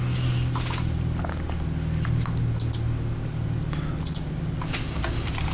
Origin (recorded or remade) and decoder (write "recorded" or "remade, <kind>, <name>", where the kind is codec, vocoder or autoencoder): recorded